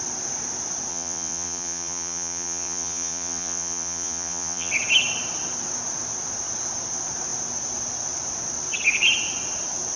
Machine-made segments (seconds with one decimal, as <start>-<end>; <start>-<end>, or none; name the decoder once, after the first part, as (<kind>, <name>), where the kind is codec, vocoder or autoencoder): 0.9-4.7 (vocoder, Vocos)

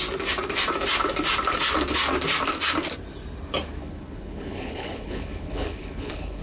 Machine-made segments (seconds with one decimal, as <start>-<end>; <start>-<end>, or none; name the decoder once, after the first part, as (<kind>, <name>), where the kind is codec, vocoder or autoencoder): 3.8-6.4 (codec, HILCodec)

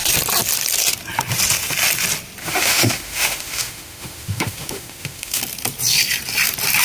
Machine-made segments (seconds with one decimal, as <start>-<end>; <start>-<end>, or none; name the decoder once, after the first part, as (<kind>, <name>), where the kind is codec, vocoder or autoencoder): 2.4-5.4 (autoencoder, DAC-VAE)